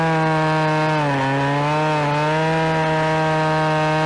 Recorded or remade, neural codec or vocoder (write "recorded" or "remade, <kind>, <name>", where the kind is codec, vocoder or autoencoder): recorded